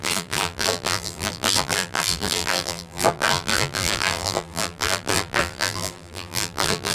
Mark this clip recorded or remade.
remade